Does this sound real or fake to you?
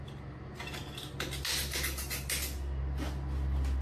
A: real